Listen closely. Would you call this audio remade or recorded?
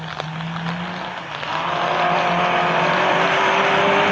recorded